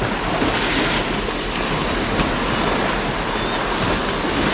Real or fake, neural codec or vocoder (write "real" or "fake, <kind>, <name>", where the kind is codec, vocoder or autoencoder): real